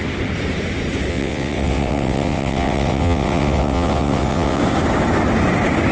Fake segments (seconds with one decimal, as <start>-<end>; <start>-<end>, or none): 1.1-4.6